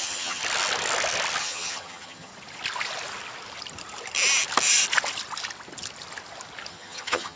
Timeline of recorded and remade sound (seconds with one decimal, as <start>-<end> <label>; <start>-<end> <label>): 0.0-0.4 remade; 0.4-1.4 recorded; 1.4-2.3 remade; 2.3-6.7 recorded; 6.7-7.4 remade